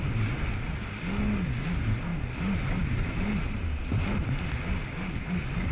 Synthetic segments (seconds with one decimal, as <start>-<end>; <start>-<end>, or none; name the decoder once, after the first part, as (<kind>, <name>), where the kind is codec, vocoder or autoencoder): none